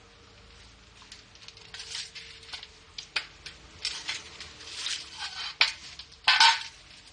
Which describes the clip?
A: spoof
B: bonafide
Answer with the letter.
B